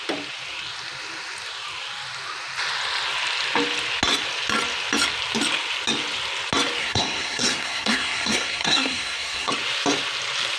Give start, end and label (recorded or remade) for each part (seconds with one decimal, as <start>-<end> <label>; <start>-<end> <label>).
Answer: 0.0-6.8 recorded; 6.8-9.5 remade; 9.5-10.6 recorded